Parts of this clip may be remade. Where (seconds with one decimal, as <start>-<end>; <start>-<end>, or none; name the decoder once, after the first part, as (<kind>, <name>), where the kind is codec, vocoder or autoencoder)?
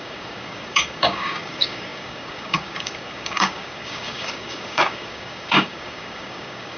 0.0-6.8 (codec, DAC)